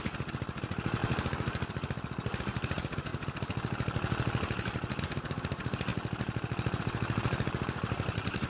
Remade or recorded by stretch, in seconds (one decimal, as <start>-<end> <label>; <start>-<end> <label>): 0.0-1.0 remade; 1.0-2.4 recorded; 2.4-3.1 remade; 3.1-5.0 recorded; 5.0-5.9 remade; 5.9-6.8 recorded; 6.8-8.5 remade